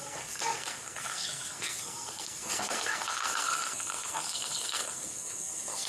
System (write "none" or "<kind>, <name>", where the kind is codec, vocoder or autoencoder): codec, SNAC